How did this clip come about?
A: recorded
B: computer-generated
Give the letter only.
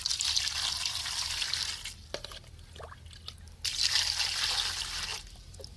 A